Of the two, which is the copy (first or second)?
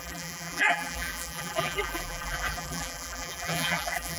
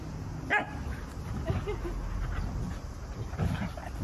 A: first